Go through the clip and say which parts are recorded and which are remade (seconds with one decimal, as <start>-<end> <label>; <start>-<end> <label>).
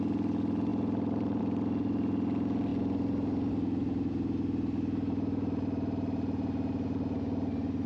0.0-0.7 recorded; 0.7-1.4 remade; 1.4-7.9 recorded